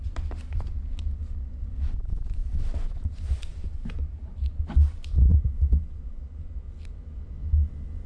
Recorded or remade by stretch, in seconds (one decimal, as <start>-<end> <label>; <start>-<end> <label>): 0.0-2.4 recorded; 2.4-4.6 remade; 4.6-5.3 recorded; 5.3-6.4 remade; 6.4-8.1 recorded